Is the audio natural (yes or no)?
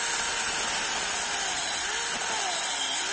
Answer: yes